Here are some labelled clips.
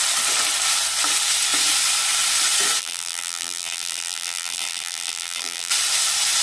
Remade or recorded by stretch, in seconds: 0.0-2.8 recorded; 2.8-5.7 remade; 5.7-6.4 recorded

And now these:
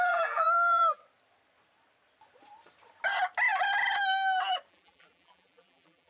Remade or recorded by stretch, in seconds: 0.0-1.0 remade; 1.0-4.7 recorded; 4.7-6.1 remade

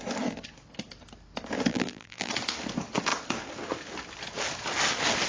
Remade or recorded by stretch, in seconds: 0.0-1.7 recorded; 1.7-2.3 remade; 2.3-5.3 recorded